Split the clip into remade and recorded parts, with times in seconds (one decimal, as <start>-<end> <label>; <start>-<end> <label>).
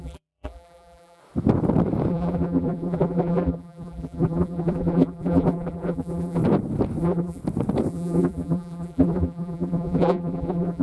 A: 0.0-1.2 remade; 1.2-2.1 recorded; 2.1-6.4 remade; 6.4-7.0 recorded; 7.0-7.4 remade; 7.4-7.9 recorded; 7.9-10.8 remade